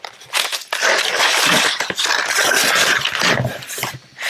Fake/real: real